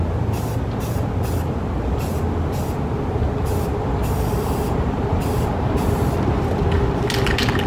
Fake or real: real